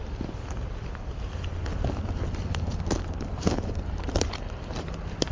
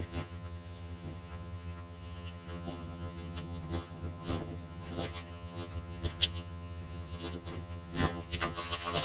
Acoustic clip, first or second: first